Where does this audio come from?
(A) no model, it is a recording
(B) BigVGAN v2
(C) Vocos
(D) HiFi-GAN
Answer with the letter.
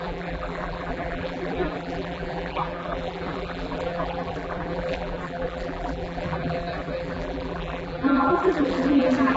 B